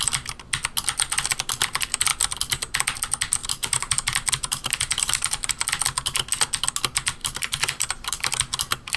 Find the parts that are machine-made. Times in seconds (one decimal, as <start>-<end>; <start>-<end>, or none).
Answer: 3.4-5.5; 7.2-8.3